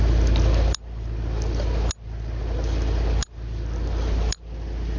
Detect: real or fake real